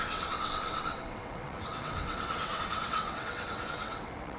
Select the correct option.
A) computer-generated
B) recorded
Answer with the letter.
A